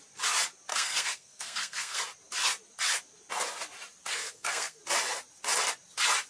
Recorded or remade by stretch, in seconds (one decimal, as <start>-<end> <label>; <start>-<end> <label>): 0.0-0.7 recorded; 0.7-2.0 remade; 2.0-4.1 recorded; 4.1-4.8 remade; 4.8-6.3 recorded